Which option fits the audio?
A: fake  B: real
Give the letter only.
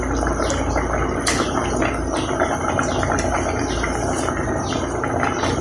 B